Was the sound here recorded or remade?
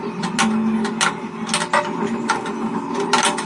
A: recorded